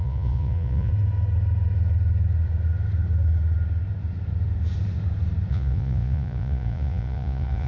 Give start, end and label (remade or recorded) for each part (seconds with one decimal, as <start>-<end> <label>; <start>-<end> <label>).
0.0-0.9 remade; 0.9-5.5 recorded; 5.5-7.7 remade